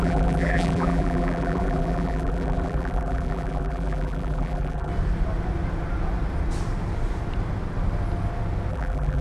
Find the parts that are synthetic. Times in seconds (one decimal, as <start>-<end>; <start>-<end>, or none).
0.0-4.9; 8.7-9.2